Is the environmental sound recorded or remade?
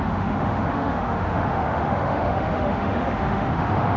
remade